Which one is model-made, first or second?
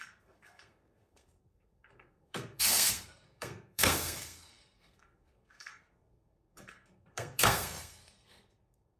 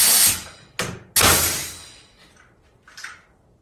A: first